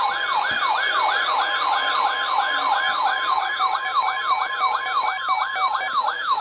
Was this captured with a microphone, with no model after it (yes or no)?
yes